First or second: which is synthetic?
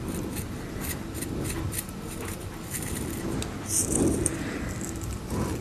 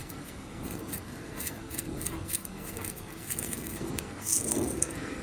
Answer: second